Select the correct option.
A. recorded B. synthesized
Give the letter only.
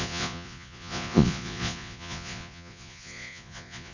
B